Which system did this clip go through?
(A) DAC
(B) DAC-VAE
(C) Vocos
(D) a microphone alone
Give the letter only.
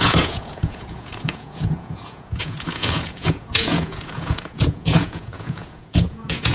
C